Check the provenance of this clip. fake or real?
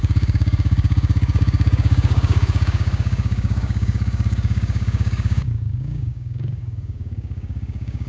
fake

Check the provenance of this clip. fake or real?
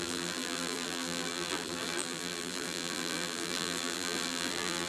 fake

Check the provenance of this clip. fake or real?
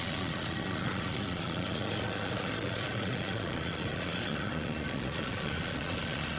fake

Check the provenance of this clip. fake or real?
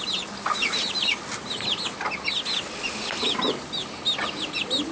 real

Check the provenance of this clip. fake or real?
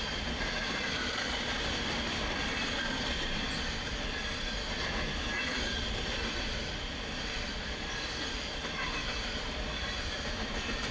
fake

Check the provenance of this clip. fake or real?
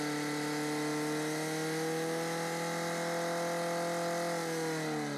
real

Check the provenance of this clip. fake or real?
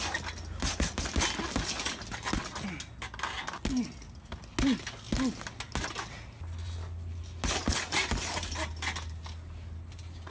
real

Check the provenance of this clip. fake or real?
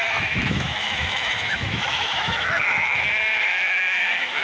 fake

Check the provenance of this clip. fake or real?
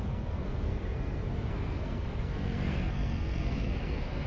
fake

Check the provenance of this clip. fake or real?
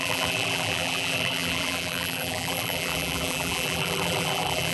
fake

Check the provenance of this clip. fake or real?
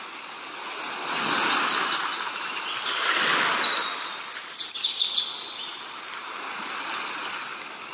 real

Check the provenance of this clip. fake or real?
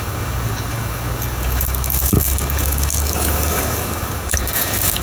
fake